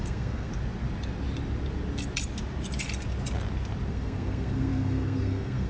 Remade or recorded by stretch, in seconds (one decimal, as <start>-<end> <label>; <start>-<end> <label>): 0.0-0.5 remade; 0.5-3.9 recorded; 3.9-5.7 remade